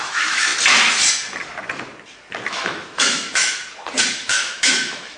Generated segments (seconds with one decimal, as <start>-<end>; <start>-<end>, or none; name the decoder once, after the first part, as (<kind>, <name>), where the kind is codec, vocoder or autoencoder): 0.0-0.5 (autoencoder, DAC-VAE); 2.5-3.6; 4.1-5.2